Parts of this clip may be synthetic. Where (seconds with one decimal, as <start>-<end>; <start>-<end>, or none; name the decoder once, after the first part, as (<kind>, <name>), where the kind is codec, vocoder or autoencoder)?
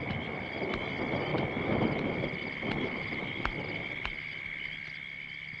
none